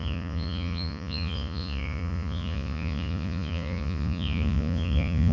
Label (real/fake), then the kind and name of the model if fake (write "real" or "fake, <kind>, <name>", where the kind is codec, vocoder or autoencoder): fake, vocoder, Vocos